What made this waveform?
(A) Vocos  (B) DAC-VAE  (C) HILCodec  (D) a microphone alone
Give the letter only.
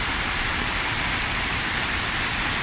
D